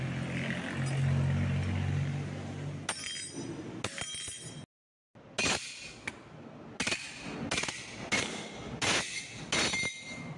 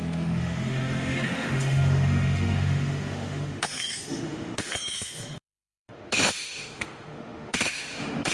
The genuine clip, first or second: first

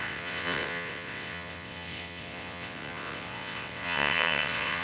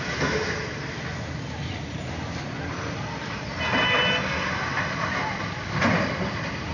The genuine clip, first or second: second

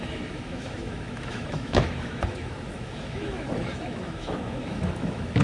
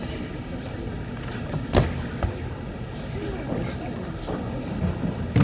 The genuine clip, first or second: second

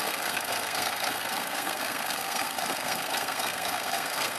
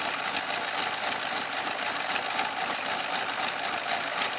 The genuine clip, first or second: second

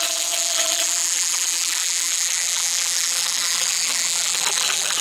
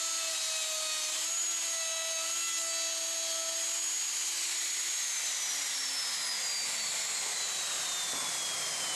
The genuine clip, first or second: second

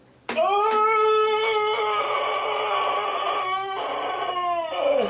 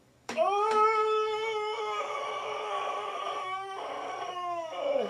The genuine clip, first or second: first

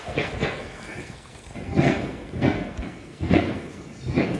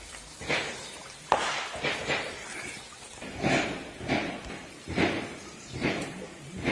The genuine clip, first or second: second